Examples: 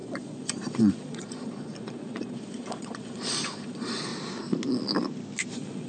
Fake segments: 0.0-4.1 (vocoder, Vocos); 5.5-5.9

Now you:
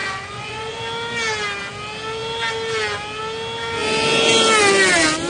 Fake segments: 0.0-0.8 (vocoder, Vocos)

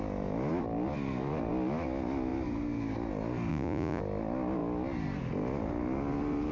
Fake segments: 3.5-4.0 (vocoder, Vocos)

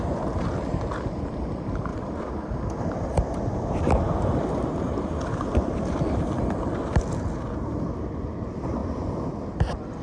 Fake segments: none

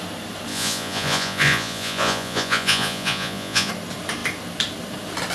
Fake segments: 0.5-3.7 (vocoder, Vocos)

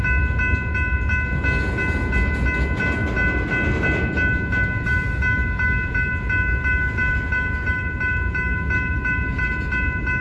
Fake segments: none